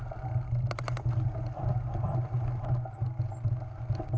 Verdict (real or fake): real